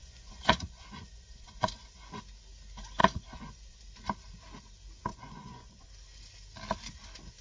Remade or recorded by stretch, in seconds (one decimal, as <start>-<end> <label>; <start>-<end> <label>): 0.0-2.2 remade; 2.2-3.0 recorded; 3.0-3.8 remade; 3.8-5.1 recorded; 5.1-5.9 remade; 5.9-7.4 recorded